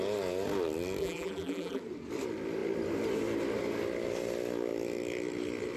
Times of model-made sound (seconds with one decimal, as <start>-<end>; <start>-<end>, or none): 1.0-1.8